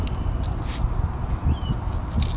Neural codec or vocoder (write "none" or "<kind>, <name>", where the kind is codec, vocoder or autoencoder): none